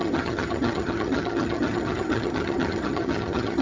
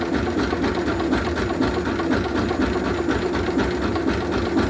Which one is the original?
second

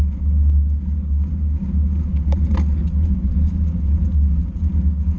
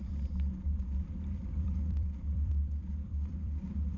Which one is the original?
first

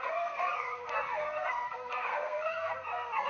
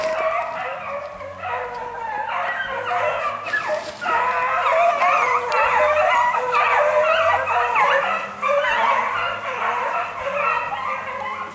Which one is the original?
second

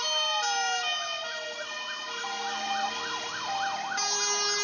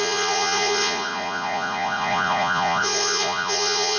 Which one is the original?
first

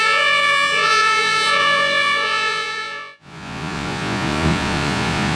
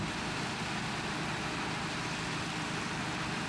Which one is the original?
second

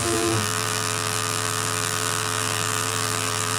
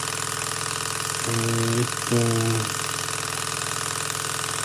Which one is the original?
second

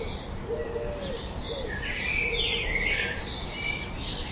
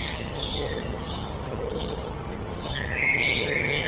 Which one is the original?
first